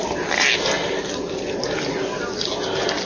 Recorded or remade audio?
recorded